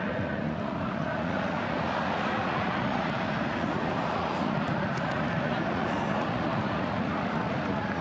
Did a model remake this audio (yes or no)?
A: yes